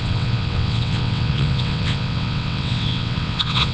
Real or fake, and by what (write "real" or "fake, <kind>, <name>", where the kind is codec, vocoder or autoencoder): fake, vocoder, WaveNeXt